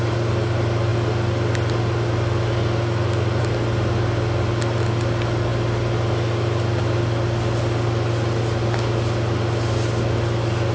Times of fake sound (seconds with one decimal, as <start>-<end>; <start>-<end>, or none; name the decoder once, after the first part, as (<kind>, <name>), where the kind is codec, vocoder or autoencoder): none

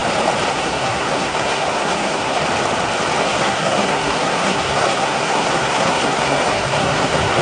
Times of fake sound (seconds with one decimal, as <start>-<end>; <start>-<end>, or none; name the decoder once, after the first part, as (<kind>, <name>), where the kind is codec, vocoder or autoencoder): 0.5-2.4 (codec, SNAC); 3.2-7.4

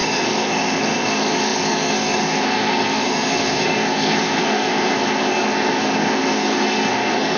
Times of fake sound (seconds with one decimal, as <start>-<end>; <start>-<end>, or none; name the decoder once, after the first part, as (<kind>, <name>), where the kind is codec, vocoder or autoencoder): 0.0-7.4 (codec, SNAC)

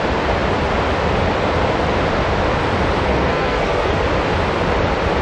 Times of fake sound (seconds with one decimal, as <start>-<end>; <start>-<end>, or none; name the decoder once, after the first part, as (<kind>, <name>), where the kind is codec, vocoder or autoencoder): 3.1-3.9 (codec, SNAC)

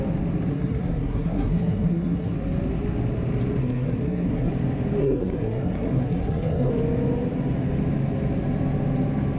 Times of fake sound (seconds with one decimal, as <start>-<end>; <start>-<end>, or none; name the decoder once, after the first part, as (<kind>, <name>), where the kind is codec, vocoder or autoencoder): 0.5-2.3 (codec, SNAC); 3.6-4.5; 5.0-6.7